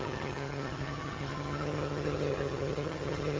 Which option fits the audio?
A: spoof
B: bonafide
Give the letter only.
A